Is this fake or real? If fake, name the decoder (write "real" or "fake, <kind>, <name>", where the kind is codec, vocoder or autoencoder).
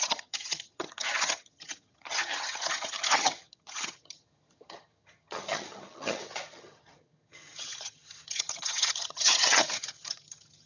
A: fake, vocoder, HiFi-GAN